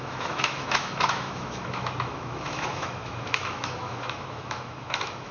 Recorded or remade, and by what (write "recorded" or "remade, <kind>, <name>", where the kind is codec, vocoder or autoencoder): remade, autoencoder, DAC-VAE